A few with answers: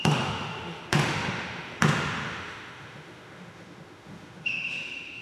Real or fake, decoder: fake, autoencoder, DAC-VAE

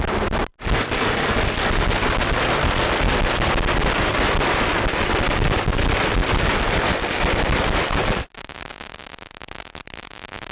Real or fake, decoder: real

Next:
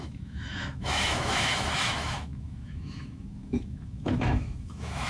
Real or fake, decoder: fake, autoencoder, DAC-VAE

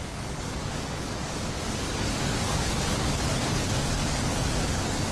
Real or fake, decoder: fake, codec, DAC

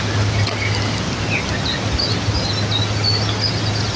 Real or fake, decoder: real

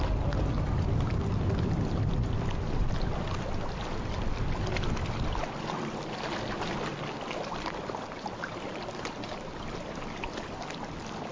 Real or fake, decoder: real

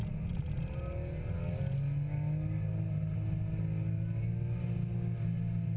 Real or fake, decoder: real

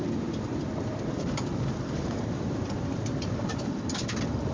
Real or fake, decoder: fake, vocoder, BigVGAN v2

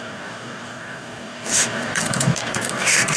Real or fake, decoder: fake, codec, DAC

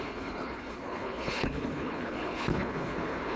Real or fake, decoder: fake, codec, HILCodec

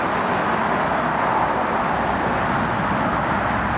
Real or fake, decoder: real